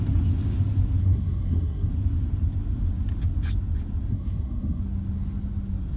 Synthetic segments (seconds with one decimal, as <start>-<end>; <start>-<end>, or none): 1.0-1.9; 4.1-4.8